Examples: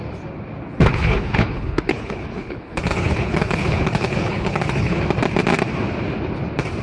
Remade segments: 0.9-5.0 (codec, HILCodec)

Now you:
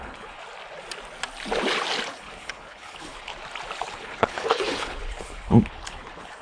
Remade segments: 0.0-0.4 (codec, HILCodec); 2.1-3.3; 3.9-6.4

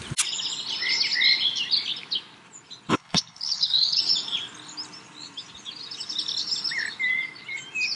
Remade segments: 2.9-4.0 (codec, HILCodec)

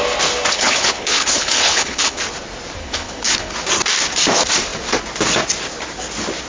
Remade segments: 0.5-2.2 (codec, HILCodec); 2.8-3.5

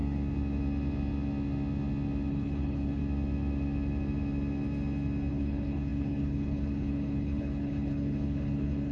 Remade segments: 2.3-3.0 (codec, HILCodec); 5.3-8.9

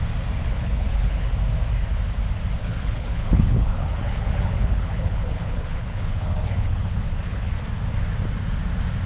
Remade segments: 0.4-1.3 (codec, HILCodec); 2.6-7.5